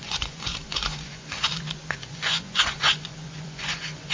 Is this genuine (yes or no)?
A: no